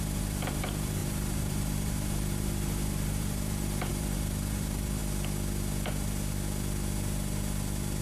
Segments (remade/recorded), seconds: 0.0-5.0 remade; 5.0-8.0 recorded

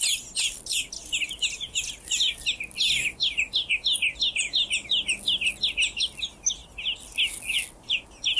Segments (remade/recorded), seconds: 0.0-8.4 recorded

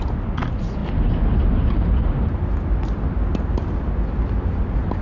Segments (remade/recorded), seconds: 0.0-5.0 recorded

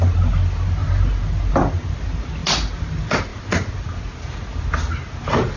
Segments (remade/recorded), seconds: 0.0-5.6 recorded

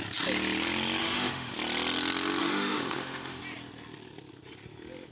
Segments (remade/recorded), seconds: 0.0-1.0 recorded; 1.0-1.5 remade; 1.5-2.4 recorded; 2.4-3.4 remade; 3.4-5.1 recorded

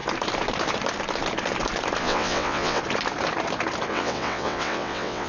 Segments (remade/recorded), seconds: 0.0-2.0 recorded; 2.0-2.8 remade; 2.8-3.9 recorded; 3.9-5.3 remade